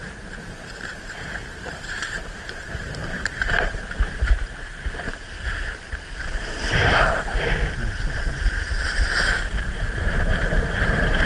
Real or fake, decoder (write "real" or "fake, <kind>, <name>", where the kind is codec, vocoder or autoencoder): fake, vocoder, BigVGAN v2